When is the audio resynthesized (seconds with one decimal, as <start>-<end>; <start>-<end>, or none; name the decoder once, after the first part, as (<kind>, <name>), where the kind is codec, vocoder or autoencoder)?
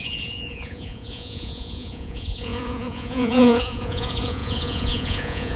0.0-5.6 (vocoder, Vocos)